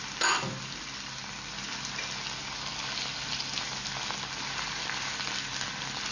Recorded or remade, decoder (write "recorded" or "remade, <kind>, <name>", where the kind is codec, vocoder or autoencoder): recorded